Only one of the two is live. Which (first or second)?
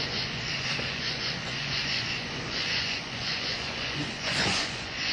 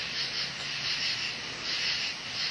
second